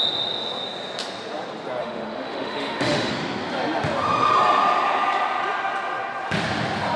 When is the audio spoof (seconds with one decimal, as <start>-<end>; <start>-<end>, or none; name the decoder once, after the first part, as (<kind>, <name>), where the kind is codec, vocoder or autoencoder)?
1.8-3.1 (autoencoder, DAC-VAE)